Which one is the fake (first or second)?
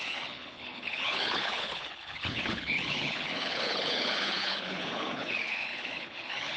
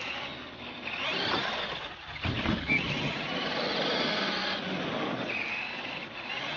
first